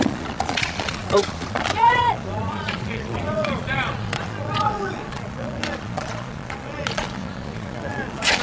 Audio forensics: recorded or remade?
remade